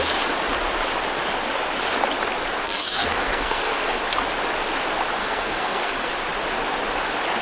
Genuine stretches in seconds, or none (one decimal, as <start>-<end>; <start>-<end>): 0.0-2.6; 4.0-5.2; 6.1-7.4